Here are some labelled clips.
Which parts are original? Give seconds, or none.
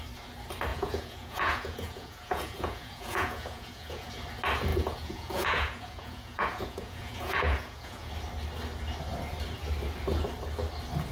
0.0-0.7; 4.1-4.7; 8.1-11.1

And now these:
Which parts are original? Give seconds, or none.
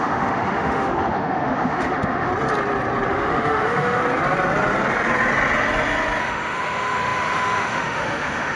2.3-3.1; 4.0-6.2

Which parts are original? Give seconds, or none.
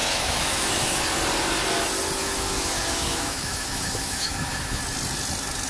1.0-2.2; 4.8-5.7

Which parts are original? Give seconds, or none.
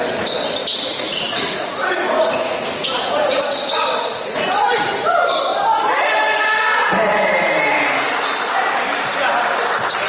0.0-0.6; 5.3-10.1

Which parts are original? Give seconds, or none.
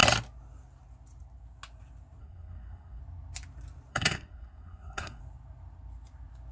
0.0-2.2; 3.0-3.9; 5.2-6.5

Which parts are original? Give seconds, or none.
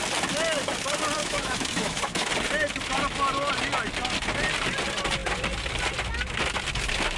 0.0-1.2; 2.3-7.2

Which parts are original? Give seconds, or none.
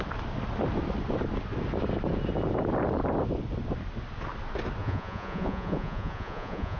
0.0-4.8